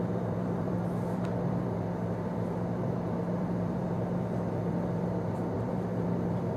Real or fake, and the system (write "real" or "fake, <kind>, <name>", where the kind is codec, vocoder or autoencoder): fake, vocoder, BigVGAN v2